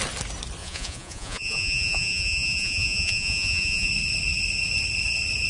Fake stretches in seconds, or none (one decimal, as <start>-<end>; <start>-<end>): 0.6-3.9